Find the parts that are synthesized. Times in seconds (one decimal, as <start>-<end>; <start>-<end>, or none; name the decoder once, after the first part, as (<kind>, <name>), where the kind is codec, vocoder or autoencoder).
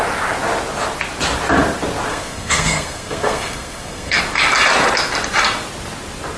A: 2.1-4.2 (codec, SNAC)